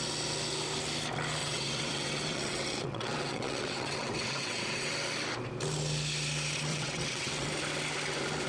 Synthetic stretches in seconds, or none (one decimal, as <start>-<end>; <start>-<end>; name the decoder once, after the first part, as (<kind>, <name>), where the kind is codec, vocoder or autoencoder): 1.4-4.9 (vocoder, WaveNeXt); 6.7-7.5